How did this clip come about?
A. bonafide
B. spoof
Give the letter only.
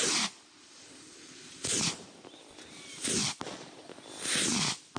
A